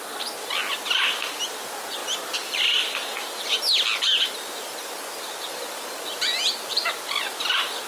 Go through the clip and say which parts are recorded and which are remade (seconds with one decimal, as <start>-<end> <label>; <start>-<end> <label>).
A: 0.0-7.9 recorded